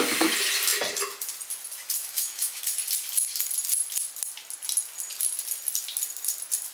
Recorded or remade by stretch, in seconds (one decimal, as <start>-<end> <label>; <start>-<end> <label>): 0.0-2.0 recorded; 2.0-2.6 remade; 2.6-6.7 recorded